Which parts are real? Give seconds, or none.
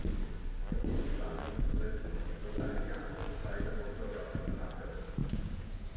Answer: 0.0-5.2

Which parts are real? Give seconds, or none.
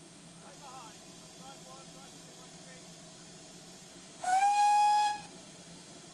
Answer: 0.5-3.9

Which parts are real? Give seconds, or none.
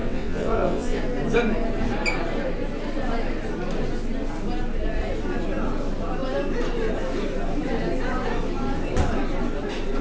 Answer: 1.0-10.0